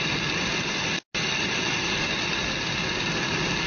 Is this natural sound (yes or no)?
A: yes